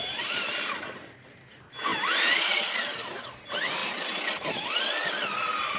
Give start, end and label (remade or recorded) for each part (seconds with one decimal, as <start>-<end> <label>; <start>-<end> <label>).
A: 0.0-5.8 recorded